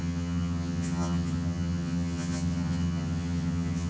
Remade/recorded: remade